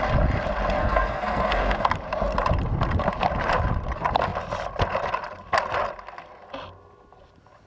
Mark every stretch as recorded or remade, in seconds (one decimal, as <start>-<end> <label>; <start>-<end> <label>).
0.0-0.8 recorded; 0.8-1.9 remade; 1.9-7.7 recorded

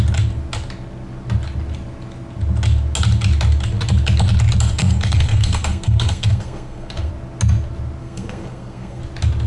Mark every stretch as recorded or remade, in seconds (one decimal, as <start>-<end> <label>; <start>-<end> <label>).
0.0-4.8 recorded; 4.8-7.1 remade; 7.1-8.0 recorded; 8.0-9.0 remade; 9.0-9.5 recorded

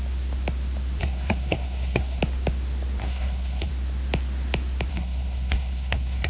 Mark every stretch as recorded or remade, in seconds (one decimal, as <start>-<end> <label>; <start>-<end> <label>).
0.0-1.0 recorded; 1.0-2.2 remade; 2.2-3.0 recorded; 3.0-3.7 remade; 3.7-4.9 recorded; 4.9-6.3 remade

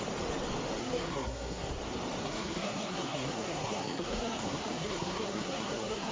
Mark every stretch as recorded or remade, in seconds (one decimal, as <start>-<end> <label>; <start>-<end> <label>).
0.0-0.8 recorded; 0.8-1.7 remade; 1.7-2.2 recorded; 2.2-6.1 remade

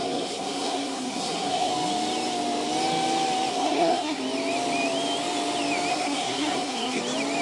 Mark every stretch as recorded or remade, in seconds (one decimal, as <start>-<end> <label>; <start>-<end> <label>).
0.0-1.7 remade; 1.7-3.5 recorded; 3.5-4.2 remade; 4.2-5.9 recorded; 5.9-7.0 remade; 7.0-7.4 recorded

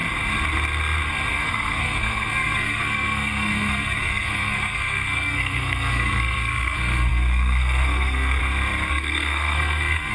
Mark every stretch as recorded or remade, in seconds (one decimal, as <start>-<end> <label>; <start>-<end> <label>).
0.0-1.3 recorded; 1.3-8.4 remade; 8.4-8.9 recorded; 8.9-10.1 remade

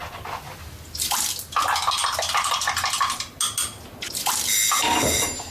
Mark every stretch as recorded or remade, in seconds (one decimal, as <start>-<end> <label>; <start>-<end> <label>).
0.0-5.5 recorded